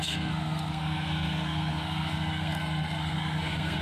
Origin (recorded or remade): remade